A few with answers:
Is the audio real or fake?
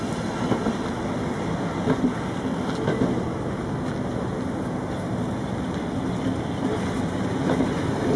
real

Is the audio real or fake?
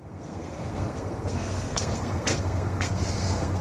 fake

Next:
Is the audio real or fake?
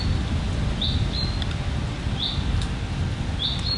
real